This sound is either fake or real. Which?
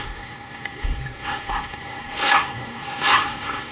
fake